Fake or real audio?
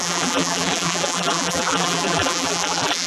fake